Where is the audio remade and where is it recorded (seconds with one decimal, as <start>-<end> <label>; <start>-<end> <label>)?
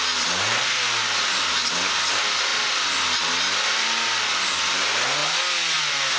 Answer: 0.0-6.2 recorded